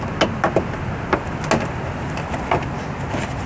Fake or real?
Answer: real